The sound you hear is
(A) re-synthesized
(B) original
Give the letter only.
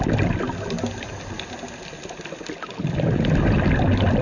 B